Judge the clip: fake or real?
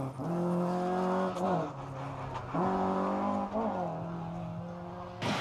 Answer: real